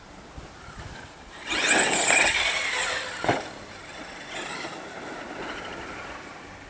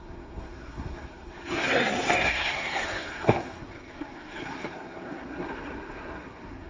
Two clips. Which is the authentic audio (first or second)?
first